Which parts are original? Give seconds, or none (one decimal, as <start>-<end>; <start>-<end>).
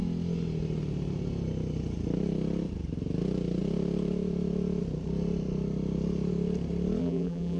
0.0-7.0